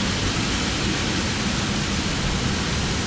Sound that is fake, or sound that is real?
real